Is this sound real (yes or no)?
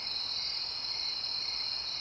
yes